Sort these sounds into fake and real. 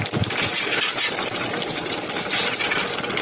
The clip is real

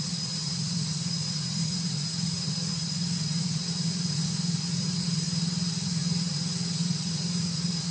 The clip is fake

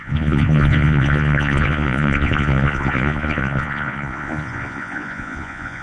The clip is fake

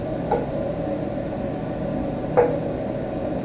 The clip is real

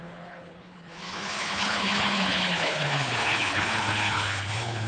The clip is fake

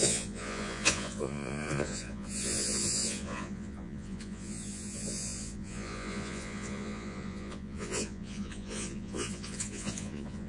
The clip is fake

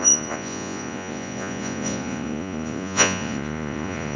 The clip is fake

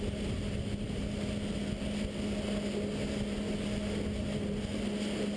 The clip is real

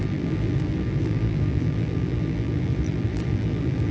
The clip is fake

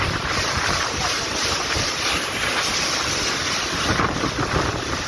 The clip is fake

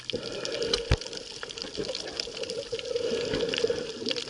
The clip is fake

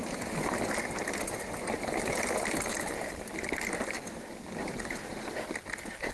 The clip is real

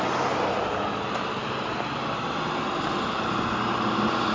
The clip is real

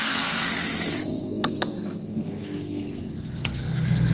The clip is fake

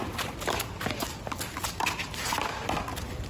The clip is real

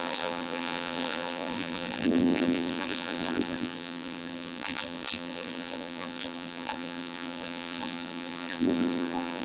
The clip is fake